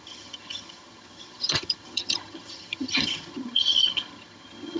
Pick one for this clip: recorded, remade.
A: remade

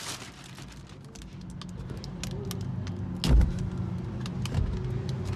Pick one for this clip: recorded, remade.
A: recorded